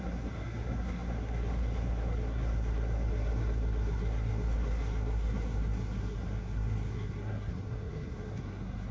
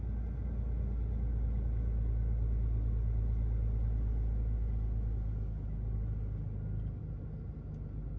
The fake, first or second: first